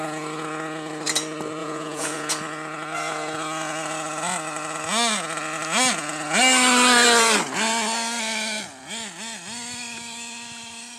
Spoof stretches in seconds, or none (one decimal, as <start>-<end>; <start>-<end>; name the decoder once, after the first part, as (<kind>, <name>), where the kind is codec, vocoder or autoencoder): 1.6-2.3 (vocoder, Vocos)